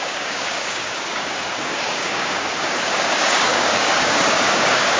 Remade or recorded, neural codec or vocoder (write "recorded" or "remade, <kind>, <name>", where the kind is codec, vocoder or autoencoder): remade, codec, DAC